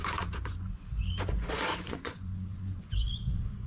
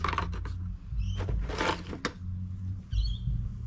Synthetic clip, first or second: first